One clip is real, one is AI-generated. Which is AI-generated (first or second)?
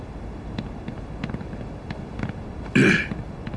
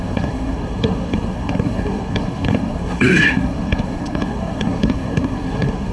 second